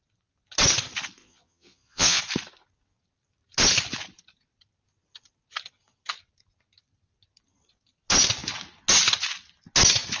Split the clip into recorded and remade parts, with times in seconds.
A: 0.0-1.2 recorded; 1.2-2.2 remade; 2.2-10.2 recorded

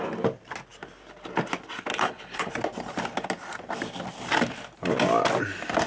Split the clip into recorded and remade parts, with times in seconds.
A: 0.0-1.9 recorded; 1.9-2.5 remade; 2.5-5.9 recorded